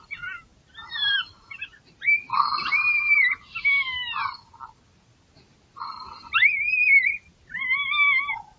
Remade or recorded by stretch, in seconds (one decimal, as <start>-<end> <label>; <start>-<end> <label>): 0.0-8.6 recorded